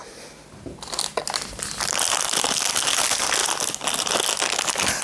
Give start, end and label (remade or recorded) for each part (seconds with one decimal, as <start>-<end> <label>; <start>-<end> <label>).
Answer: 0.0-5.0 recorded